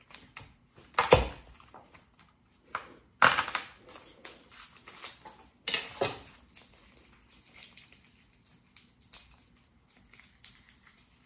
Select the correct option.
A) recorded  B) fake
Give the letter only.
A